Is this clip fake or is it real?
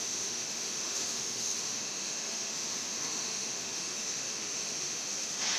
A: fake